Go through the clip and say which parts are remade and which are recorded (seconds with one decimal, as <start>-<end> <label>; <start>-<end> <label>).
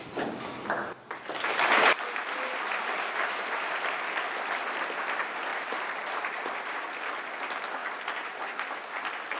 0.0-2.5 recorded; 2.5-3.7 remade; 3.7-5.5 recorded; 5.5-6.7 remade; 6.7-7.8 recorded; 7.8-8.7 remade; 8.7-9.4 recorded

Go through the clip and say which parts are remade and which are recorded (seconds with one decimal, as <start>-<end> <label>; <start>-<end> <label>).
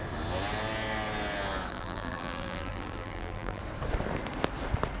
0.0-1.7 recorded; 1.7-3.6 remade; 3.6-5.0 recorded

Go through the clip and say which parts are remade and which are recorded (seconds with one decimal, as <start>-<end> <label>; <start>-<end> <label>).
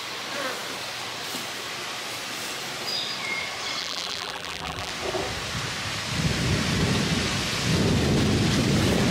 0.0-3.8 recorded; 3.8-4.9 remade; 4.9-9.1 recorded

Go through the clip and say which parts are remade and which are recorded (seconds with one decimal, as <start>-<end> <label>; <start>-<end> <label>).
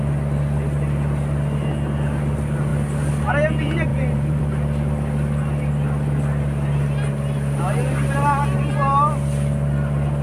0.0-3.9 recorded; 3.9-4.4 remade; 4.4-10.2 recorded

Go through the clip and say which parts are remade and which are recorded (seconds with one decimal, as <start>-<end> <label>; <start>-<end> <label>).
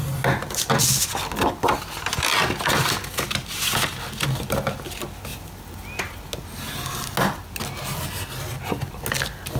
0.0-9.6 recorded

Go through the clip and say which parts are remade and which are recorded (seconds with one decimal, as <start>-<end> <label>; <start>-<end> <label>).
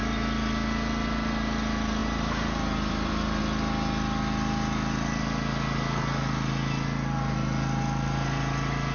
0.0-2.0 recorded; 2.0-3.4 remade; 3.4-8.9 recorded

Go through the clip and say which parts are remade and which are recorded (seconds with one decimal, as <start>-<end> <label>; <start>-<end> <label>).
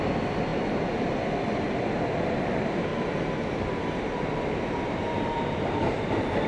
0.0-0.5 recorded; 0.5-1.1 remade; 1.1-2.9 recorded; 2.9-5.8 remade; 5.8-6.5 recorded